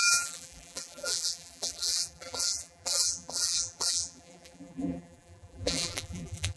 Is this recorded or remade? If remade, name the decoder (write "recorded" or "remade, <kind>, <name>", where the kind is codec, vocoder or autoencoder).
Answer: remade, vocoder, BigVGAN v2